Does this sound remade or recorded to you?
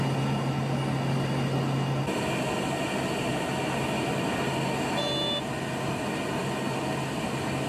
recorded